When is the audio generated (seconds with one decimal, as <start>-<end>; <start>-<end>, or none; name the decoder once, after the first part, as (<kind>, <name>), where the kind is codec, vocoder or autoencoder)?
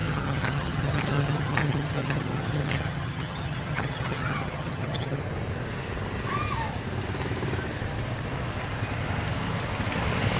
0.0-5.2 (vocoder, HiFi-GAN)